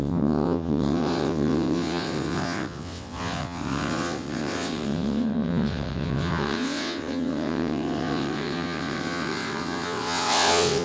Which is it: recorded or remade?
remade